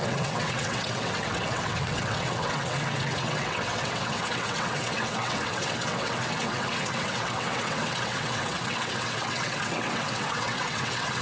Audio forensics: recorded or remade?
remade